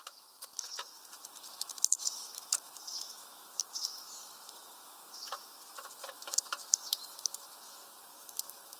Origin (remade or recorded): remade